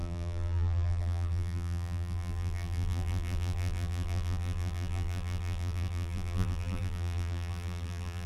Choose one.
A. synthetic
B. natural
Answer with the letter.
A